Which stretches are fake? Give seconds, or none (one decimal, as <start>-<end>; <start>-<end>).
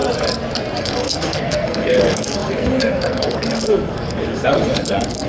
0.8-5.3